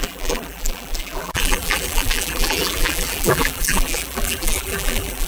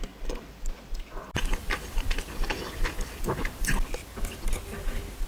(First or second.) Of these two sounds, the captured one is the second